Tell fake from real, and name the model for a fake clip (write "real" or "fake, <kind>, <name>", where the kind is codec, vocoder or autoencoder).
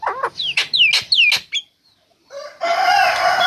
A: real